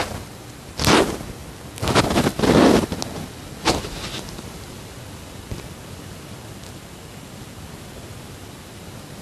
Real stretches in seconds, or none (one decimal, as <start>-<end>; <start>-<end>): 0.0-9.2